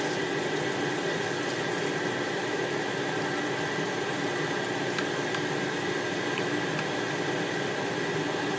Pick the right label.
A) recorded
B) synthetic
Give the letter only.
A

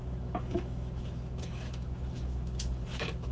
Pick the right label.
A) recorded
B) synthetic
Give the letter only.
B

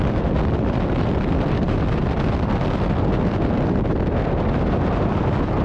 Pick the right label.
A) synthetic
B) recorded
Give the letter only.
B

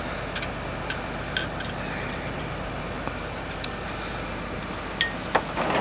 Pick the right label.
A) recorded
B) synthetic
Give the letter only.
A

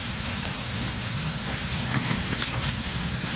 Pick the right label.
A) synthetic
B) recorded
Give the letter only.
A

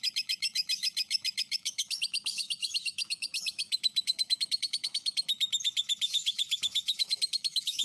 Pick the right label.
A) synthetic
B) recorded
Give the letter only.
A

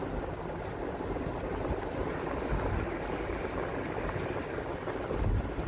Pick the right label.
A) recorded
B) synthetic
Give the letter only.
A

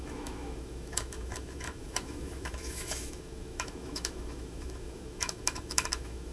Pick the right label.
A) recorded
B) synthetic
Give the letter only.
B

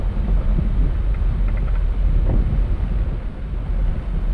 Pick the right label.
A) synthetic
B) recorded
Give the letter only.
B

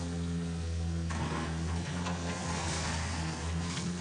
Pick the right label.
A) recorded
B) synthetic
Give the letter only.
B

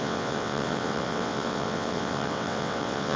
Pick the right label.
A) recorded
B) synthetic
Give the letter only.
B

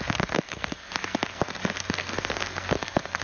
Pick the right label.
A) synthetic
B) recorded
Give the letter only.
A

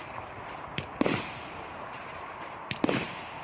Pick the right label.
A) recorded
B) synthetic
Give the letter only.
A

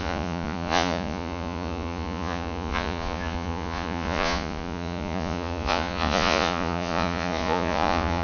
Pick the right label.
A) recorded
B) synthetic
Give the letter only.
B